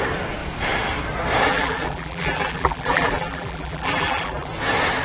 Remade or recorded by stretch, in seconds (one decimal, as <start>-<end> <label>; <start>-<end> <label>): 0.0-1.5 recorded; 1.5-4.5 remade; 4.5-5.0 recorded

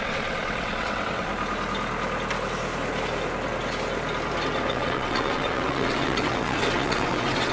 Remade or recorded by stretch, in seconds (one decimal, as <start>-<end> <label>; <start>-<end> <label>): 0.0-1.3 remade; 1.3-4.7 recorded; 4.7-7.5 remade

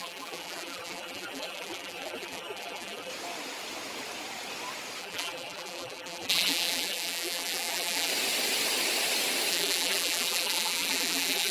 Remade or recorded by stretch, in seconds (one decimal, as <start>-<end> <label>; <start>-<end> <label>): 0.0-3.1 remade; 3.1-5.0 recorded; 5.0-8.1 remade; 8.1-9.5 recorded; 9.5-11.5 remade